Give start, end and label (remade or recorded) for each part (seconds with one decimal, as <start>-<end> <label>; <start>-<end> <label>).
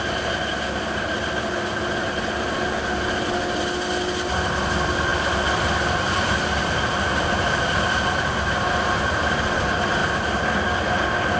0.0-5.1 recorded; 5.1-9.4 remade; 9.4-11.4 recorded